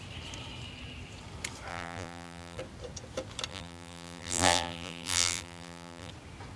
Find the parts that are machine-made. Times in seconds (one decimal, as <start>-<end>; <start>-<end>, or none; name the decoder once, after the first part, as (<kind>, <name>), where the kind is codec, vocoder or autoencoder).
1.7-2.6 (vocoder, BigVGAN v2); 3.5-6.1